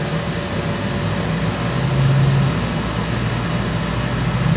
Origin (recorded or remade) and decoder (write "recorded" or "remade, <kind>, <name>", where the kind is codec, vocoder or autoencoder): recorded